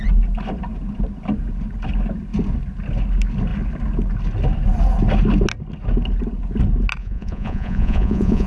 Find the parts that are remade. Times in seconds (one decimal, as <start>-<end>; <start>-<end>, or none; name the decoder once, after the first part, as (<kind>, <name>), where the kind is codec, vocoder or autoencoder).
7.0-8.5 (vocoder, Vocos)